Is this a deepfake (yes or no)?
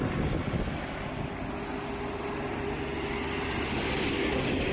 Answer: no